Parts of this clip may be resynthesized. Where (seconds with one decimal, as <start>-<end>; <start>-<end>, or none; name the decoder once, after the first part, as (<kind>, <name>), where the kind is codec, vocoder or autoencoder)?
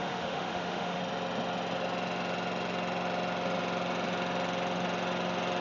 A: 0.0-1.0 (autoencoder, DAC-VAE)